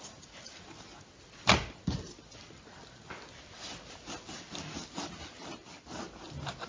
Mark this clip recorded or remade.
recorded